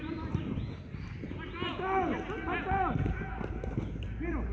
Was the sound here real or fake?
real